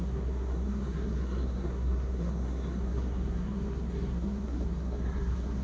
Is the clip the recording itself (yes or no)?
no